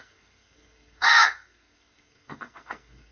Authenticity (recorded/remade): remade